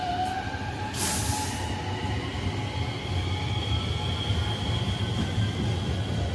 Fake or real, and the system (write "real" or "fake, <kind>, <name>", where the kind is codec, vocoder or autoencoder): real